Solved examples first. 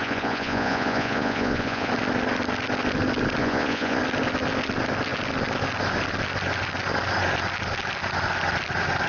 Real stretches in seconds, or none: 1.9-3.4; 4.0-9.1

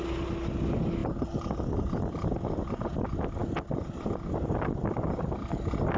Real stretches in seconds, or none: 0.0-6.0

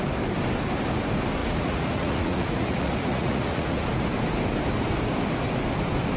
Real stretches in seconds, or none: 0.0-1.4; 3.9-6.2

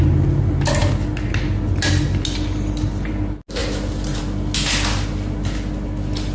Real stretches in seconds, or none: 0.0-6.3

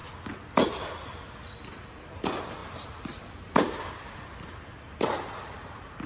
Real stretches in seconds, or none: 0.0-6.1